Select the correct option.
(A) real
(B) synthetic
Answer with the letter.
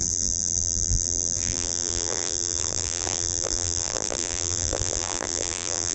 B